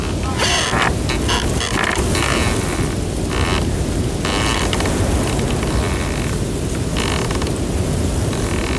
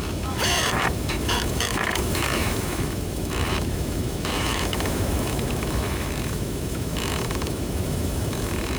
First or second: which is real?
first